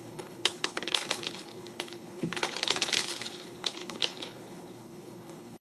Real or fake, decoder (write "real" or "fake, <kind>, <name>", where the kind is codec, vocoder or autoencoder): fake, codec, HILCodec